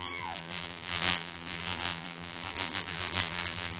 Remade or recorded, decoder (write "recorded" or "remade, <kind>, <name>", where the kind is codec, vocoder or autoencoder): remade, vocoder, BigVGAN v2